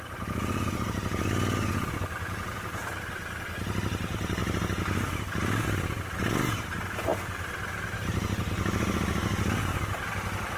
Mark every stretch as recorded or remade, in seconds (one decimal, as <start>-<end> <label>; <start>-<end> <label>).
0.0-10.6 recorded